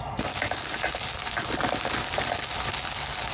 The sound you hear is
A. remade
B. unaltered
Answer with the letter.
B